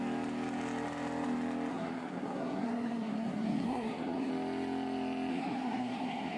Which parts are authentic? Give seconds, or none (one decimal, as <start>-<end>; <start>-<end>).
0.0-1.7; 4.3-5.3